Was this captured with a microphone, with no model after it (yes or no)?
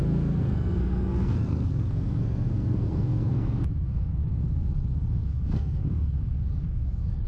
no